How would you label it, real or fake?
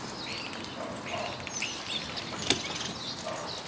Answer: real